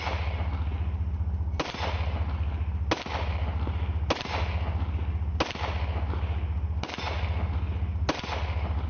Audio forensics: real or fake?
real